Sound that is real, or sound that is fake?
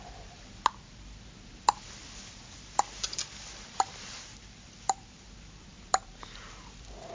real